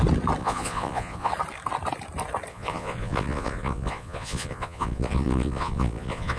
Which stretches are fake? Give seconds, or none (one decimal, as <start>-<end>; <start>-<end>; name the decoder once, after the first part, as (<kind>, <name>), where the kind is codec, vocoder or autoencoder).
0.4-1.3 (vocoder, Vocos); 2.5-6.4